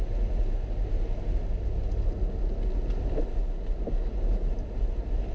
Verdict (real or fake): real